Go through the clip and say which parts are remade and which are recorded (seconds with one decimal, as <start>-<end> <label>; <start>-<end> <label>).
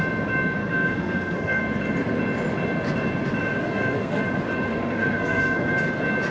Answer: 0.0-0.6 recorded; 0.6-1.6 remade; 1.6-3.6 recorded; 3.6-4.2 remade; 4.2-4.7 recorded; 4.7-5.8 remade; 5.8-6.3 recorded